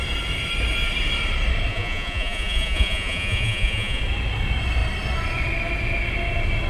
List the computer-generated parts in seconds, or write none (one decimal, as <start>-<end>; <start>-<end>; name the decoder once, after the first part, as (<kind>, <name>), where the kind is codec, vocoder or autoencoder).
1.7-4.0 (vocoder, Vocos)

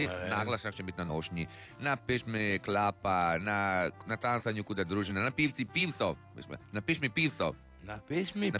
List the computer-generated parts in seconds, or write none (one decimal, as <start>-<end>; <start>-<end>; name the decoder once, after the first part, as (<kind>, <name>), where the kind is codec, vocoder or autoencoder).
none

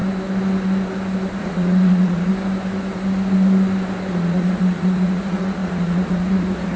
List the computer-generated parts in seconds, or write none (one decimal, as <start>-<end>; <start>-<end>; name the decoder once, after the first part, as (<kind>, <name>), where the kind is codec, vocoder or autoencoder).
1.4-2.3 (vocoder, Vocos); 4.1-6.8

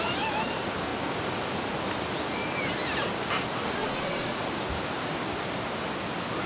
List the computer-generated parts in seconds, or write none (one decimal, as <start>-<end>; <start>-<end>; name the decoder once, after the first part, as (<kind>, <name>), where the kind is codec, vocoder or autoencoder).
3.8-4.4 (vocoder, Vocos)

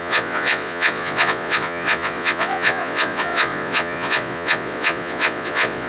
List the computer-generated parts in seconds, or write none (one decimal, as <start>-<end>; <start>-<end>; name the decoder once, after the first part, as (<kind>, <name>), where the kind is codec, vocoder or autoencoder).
0.0-5.9 (vocoder, Vocos)

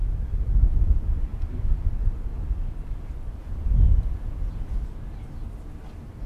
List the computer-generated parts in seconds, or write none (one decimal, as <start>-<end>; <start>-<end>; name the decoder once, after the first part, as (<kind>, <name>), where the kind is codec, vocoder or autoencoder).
3.4-4.8 (vocoder, Vocos)

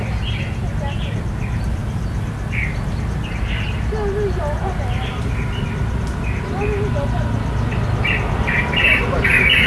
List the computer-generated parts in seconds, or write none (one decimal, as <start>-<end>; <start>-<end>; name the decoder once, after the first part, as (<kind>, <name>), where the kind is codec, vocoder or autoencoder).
none